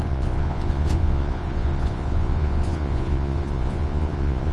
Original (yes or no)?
no